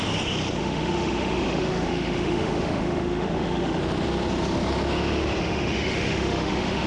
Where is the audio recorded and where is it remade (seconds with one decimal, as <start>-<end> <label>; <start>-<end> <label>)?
0.0-0.6 recorded; 0.6-3.8 remade; 3.8-5.4 recorded; 5.4-6.9 remade